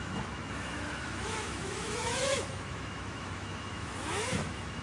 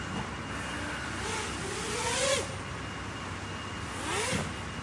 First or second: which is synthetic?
first